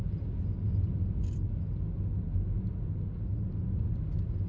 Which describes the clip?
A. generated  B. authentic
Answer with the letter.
B